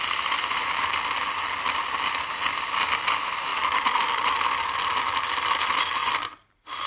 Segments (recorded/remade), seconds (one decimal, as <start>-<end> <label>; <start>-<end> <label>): 0.0-6.9 recorded